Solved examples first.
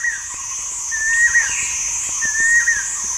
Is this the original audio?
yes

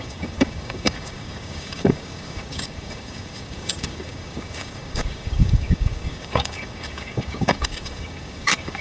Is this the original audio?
no